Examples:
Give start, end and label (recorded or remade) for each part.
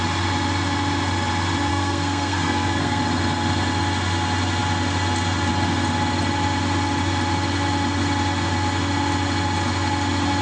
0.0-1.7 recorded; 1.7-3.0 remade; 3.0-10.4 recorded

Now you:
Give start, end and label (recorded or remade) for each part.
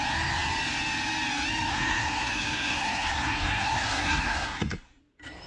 0.0-1.7 recorded; 1.7-5.0 remade; 5.0-5.5 recorded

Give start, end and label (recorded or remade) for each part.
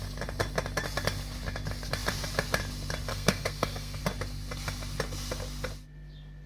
0.0-3.1 recorded; 3.1-4.0 remade; 4.0-6.5 recorded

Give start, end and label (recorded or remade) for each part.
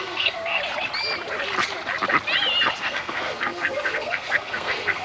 0.0-0.6 remade; 0.6-2.8 recorded; 2.8-5.0 remade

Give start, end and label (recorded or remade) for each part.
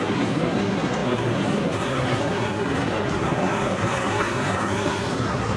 0.0-5.6 remade